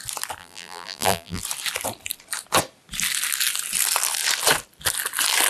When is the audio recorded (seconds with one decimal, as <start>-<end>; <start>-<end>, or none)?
0.0-0.4; 1.4-5.5

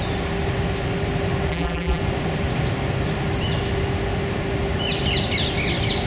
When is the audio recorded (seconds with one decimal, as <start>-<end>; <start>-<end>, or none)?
0.0-1.5; 2.0-6.1

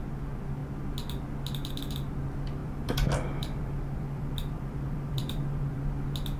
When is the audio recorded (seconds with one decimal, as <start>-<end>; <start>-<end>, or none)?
0.0-2.6; 5.8-6.4

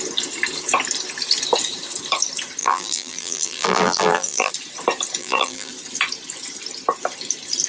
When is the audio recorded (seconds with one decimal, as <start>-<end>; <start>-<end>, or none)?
0.0-2.6; 4.5-5.2; 5.7-7.7

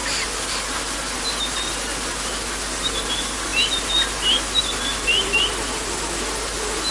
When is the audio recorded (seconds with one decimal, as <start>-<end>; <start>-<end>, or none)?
0.0-6.9

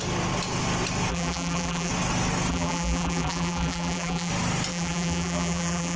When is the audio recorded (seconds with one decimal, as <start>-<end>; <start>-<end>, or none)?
0.0-1.1; 1.9-2.5; 4.3-4.7

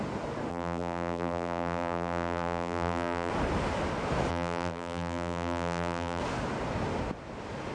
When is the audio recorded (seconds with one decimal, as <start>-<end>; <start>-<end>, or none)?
0.0-0.5; 3.3-4.3; 6.2-7.7

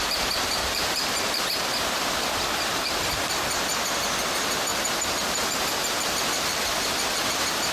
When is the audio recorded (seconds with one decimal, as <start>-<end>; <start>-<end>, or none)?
0.0-0.6; 1.4-2.7; 3.4-4.7; 7.2-7.7